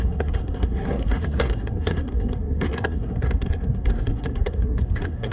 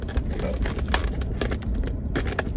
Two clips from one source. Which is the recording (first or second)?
second